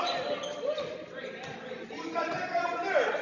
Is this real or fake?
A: real